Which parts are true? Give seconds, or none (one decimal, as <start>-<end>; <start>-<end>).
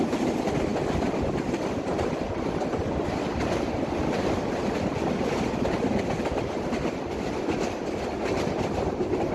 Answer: 0.0-9.3